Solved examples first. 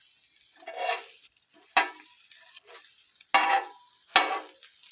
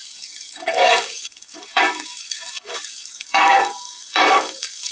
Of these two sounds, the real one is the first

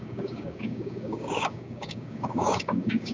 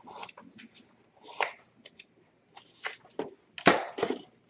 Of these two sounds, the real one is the second